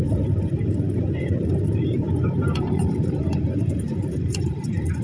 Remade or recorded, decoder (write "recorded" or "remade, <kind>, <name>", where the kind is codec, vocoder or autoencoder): remade, vocoder, BigVGAN v2